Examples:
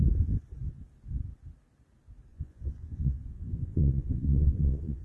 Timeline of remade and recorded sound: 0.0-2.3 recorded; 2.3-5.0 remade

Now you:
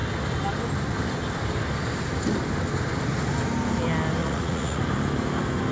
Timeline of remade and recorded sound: 0.0-4.2 recorded; 4.2-4.8 remade; 4.8-5.7 recorded

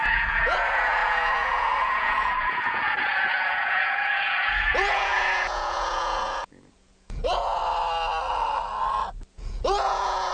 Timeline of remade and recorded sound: 0.0-7.6 remade; 7.6-9.3 recorded; 9.3-10.3 remade

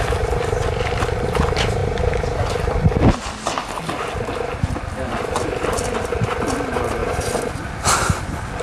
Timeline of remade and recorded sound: 0.0-8.6 recorded